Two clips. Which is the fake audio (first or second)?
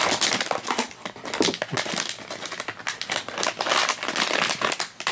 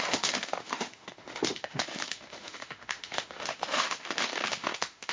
second